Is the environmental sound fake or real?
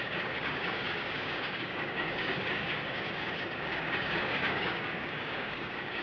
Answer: fake